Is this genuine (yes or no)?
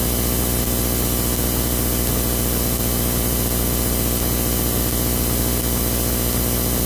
yes